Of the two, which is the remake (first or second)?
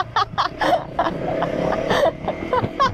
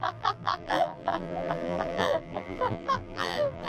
second